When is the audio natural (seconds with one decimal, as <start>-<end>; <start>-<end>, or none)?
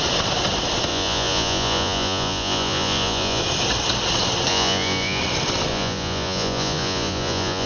0.0-0.9; 3.4-4.5; 5.2-5.7